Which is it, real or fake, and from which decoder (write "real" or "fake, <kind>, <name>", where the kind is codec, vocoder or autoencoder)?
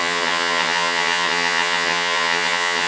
fake, vocoder, HiFi-GAN